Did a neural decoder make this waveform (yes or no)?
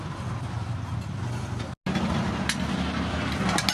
no